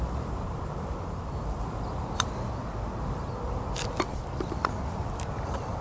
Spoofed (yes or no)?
no